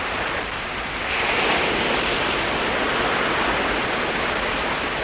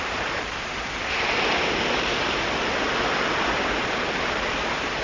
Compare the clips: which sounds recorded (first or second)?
first